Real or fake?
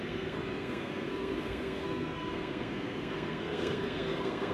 fake